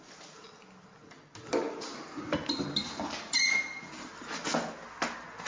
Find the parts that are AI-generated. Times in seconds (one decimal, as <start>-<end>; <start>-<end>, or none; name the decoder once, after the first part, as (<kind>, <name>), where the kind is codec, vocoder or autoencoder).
none